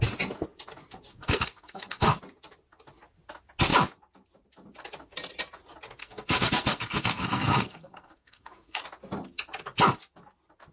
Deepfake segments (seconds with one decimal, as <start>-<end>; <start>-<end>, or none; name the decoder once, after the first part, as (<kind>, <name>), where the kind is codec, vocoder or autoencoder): 1.1-2.2 (codec, SNAC); 6.0-8.8